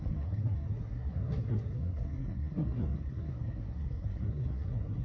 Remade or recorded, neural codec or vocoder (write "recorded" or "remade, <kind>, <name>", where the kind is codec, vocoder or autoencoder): remade, codec, SNAC